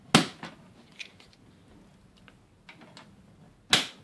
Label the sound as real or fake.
real